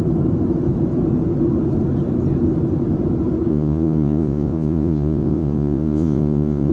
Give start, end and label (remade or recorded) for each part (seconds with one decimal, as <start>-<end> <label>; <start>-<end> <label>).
0.0-3.5 recorded; 3.5-6.7 remade